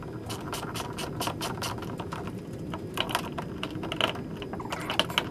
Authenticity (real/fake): real